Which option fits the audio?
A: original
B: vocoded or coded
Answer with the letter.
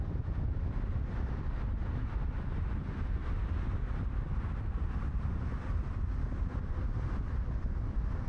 A